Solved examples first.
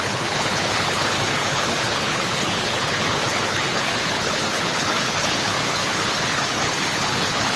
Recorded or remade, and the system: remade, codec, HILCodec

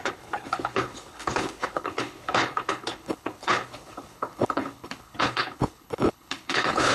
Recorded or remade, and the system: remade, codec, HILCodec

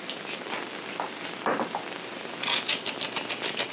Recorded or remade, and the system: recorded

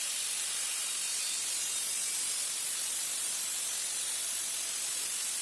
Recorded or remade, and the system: recorded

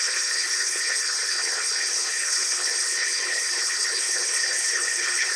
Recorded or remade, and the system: remade, codec, HILCodec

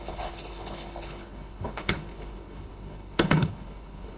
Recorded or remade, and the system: remade, codec, HILCodec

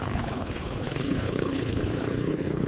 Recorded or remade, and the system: remade, codec, HILCodec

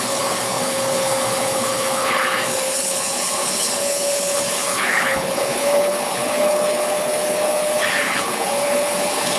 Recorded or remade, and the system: remade, codec, HILCodec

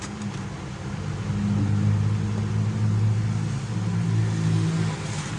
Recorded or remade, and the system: recorded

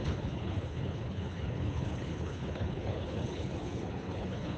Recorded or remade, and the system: remade, codec, HILCodec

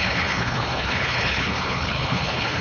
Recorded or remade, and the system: remade, codec, HILCodec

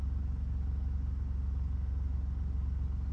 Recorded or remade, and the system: recorded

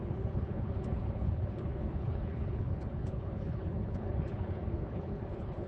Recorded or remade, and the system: remade, codec, HILCodec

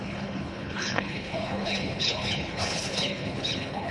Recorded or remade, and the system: remade, codec, HILCodec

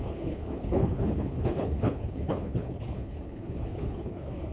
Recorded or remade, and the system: remade, codec, HILCodec